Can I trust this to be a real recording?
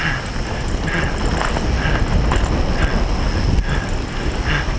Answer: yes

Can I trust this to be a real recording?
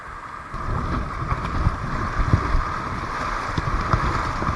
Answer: yes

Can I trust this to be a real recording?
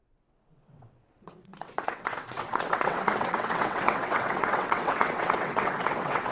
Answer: no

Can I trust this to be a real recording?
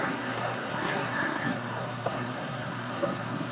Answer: no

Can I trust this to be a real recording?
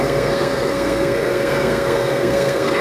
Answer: no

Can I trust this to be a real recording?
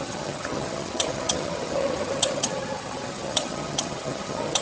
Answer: no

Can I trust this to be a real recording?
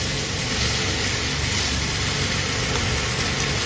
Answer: yes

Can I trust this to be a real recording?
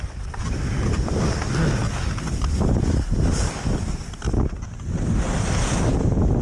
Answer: yes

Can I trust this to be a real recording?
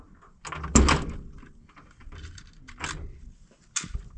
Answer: yes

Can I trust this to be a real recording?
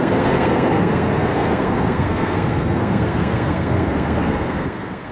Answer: no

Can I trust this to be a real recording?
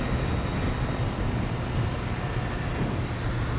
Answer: yes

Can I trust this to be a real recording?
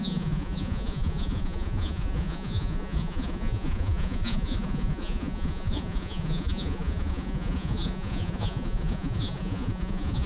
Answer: no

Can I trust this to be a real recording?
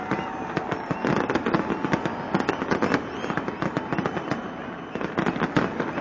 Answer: yes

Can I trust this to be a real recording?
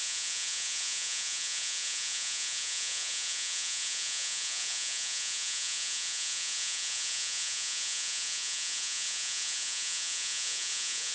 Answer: no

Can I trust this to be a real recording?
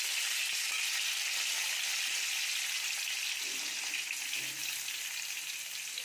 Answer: yes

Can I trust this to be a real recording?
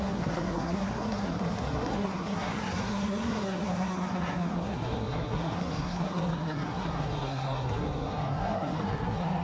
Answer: no